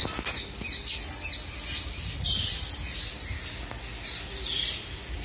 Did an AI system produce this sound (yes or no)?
no